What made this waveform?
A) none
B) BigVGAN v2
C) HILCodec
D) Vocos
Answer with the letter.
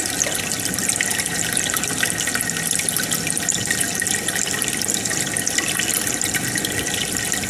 A